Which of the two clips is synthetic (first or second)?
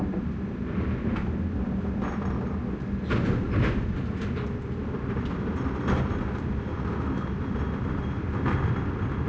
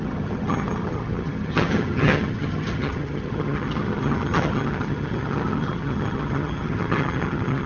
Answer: second